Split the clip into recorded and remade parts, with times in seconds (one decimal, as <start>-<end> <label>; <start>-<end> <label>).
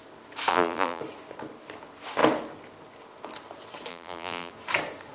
0.0-0.5 recorded; 0.5-1.0 remade; 1.0-3.9 recorded; 3.9-4.5 remade; 4.5-5.1 recorded